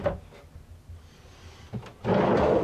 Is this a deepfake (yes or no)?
no